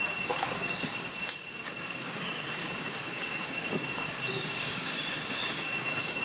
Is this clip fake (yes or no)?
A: yes